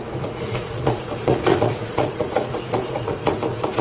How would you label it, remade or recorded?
remade